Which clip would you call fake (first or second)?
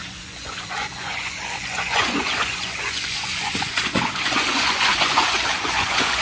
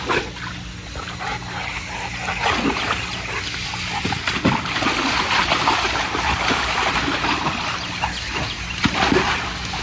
first